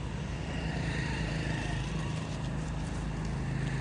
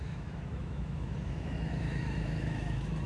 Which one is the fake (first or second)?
second